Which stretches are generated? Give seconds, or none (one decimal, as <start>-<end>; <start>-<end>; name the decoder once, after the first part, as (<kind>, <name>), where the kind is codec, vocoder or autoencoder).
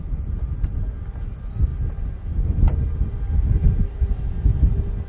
none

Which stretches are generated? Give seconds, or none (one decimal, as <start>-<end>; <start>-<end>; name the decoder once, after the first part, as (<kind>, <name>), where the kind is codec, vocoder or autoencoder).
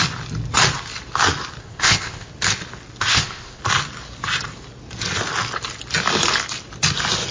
1.6-2.3 (codec, ZipCodec); 3.1-3.6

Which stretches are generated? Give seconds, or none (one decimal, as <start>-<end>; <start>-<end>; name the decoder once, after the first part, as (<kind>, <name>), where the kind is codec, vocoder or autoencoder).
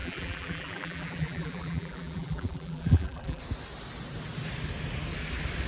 0.0-3.4 (vocoder, BigVGAN v2)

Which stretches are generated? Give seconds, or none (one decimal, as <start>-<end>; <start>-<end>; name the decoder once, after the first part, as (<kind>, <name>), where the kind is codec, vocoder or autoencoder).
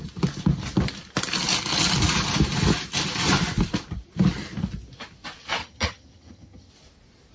5.6-6.7 (vocoder, HiFi-GAN)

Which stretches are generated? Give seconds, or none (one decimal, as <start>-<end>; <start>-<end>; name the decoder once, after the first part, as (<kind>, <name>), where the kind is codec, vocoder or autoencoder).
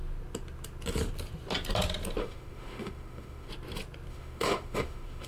2.2-3.5 (autoencoder, DAC-VAE); 4.1-5.3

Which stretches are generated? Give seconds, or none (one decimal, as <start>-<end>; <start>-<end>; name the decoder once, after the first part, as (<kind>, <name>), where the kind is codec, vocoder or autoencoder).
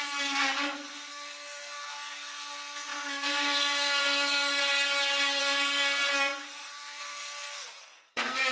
0.0-4.6 (codec, SNAC); 5.4-8.5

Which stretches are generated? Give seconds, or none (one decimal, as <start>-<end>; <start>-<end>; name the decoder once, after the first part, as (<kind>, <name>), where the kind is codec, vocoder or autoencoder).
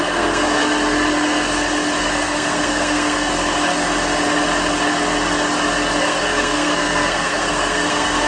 0.0-0.6 (codec, SNAC); 2.0-3.3; 6.0-8.3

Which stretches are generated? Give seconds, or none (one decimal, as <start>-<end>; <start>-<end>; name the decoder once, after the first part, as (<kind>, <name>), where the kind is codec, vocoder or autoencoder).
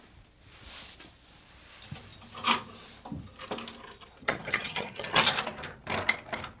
4.2-5.2 (vocoder, HiFi-GAN)